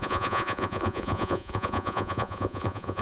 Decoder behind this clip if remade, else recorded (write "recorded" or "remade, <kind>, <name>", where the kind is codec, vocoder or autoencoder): remade, vocoder, Vocos